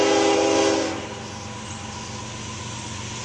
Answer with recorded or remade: recorded